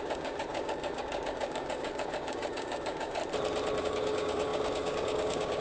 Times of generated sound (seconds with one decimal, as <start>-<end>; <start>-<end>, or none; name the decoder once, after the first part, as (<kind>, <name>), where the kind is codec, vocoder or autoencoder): 0.0-3.2 (codec, DAC); 3.8-5.6